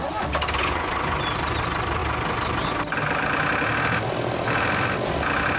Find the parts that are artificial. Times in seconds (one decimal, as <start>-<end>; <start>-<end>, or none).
0.6-1.2